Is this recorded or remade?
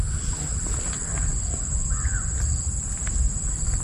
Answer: recorded